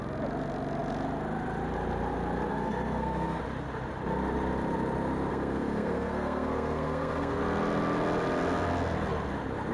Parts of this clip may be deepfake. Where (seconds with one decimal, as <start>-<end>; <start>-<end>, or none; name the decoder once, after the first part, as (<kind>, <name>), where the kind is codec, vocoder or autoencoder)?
2.5-3.4 (codec, SNAC); 5.3-7.4

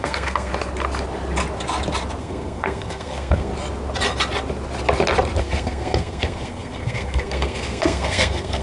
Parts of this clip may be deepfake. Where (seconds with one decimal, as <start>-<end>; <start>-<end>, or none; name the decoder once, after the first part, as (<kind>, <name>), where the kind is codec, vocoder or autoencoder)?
0.0-0.5 (codec, SNAC); 2.2-3.5; 5.4-8.6